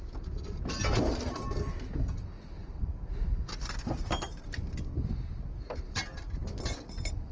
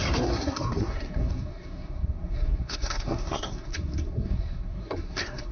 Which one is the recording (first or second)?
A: first